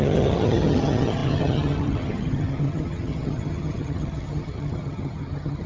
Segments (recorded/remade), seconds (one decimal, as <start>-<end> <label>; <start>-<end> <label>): 0.0-5.7 remade